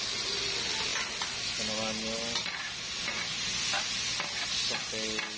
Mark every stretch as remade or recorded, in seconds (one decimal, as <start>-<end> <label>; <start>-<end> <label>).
0.0-5.4 recorded